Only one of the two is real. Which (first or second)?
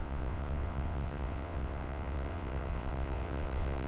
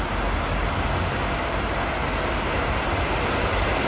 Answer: second